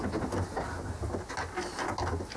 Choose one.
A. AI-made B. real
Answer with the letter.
B